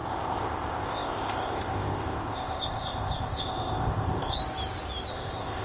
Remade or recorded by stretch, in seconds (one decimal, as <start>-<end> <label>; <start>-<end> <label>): 0.0-4.4 remade; 4.4-5.1 recorded; 5.1-5.6 remade